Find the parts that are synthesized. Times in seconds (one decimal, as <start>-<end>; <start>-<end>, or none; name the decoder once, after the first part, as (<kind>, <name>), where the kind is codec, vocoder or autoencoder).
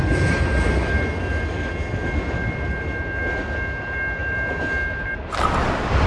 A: none